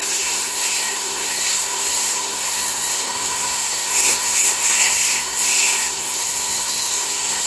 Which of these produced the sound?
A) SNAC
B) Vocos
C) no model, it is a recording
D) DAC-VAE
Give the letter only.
A